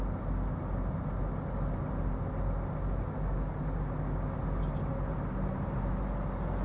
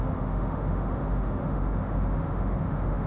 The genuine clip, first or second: first